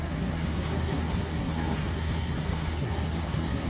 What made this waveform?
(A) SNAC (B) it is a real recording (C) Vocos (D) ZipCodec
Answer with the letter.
A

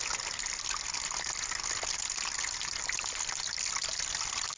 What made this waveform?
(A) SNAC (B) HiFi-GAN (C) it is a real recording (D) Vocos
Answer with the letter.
C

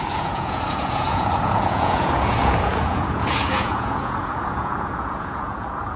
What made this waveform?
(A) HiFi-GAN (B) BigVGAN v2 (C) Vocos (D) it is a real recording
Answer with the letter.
C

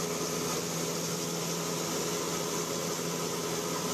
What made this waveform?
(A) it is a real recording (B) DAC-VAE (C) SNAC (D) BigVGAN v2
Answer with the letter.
A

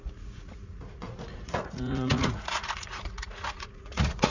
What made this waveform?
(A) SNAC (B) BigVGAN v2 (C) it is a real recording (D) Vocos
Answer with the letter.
D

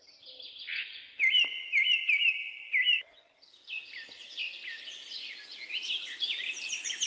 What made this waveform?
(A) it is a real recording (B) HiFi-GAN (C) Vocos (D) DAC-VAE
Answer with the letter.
A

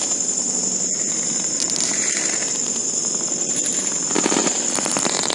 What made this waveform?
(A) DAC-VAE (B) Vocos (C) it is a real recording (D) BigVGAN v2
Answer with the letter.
D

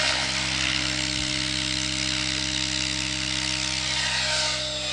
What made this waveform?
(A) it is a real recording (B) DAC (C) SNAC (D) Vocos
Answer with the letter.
A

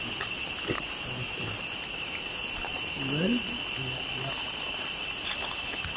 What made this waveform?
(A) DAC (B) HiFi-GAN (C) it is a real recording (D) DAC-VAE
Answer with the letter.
C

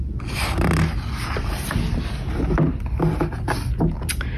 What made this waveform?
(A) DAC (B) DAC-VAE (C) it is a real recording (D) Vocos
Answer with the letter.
C